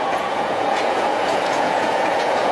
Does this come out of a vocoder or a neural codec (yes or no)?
yes